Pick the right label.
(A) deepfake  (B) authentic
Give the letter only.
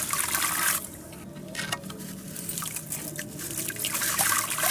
B